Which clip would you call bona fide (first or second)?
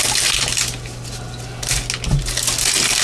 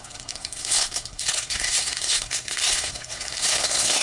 first